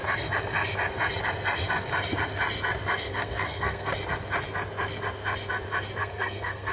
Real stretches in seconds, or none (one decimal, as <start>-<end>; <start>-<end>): 0.0-3.1; 3.9-6.0